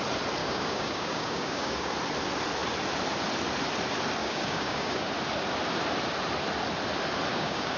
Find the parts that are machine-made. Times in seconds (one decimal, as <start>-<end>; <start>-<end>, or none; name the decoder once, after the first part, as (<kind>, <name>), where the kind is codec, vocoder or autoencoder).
0.4-1.9 (codec, DAC); 4.2-5.0; 7.3-7.8